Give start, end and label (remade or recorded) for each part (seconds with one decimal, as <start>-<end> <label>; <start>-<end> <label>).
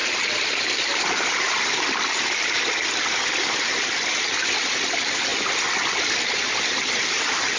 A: 0.0-7.6 recorded